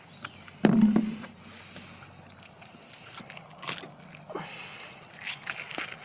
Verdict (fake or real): real